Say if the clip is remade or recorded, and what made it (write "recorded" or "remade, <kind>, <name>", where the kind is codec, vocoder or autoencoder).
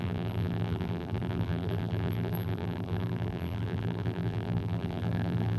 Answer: remade, vocoder, BigVGAN v2